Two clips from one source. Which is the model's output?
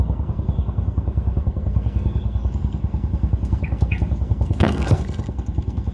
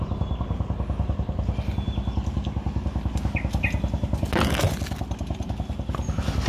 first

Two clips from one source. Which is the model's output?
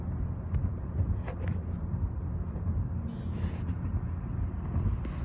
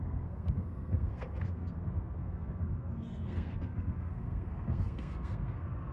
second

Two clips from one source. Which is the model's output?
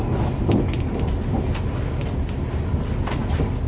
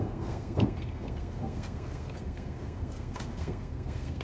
second